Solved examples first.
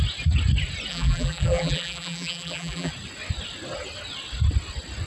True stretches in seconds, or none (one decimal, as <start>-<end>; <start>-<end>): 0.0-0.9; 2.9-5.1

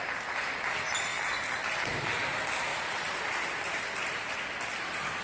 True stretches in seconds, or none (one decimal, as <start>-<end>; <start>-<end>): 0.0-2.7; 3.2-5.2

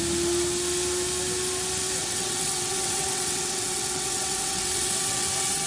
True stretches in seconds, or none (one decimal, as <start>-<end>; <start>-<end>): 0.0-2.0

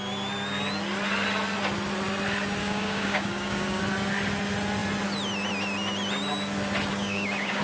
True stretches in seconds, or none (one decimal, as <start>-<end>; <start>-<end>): 0.0-2.6; 3.8-6.9

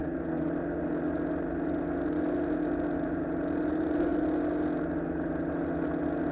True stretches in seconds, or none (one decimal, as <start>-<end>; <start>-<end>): 0.0-3.0; 4.1-6.3

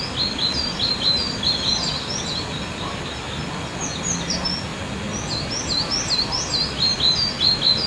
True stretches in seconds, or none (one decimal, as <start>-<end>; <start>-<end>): 0.0-1.2; 3.4-7.9

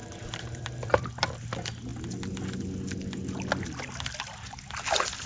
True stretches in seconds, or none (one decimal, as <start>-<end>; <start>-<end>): 1.0-5.3

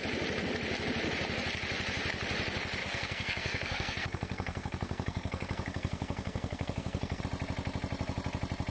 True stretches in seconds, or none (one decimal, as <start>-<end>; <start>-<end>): 0.0-2.8; 7.2-8.7